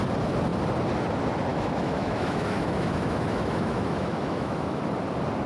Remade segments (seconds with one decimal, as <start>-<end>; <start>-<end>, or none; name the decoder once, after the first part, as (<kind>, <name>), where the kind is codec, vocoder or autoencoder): 1.5-4.8 (autoencoder, DAC-VAE)